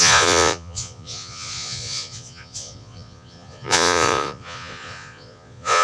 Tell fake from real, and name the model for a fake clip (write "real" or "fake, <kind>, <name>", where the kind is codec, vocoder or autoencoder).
fake, vocoder, Vocos